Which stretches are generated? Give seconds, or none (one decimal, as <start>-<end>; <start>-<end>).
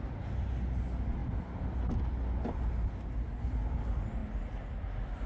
none